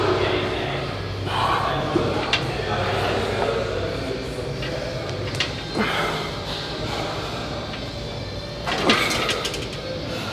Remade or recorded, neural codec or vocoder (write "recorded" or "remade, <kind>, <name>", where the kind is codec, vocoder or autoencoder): recorded